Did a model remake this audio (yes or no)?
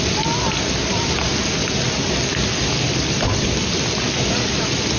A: no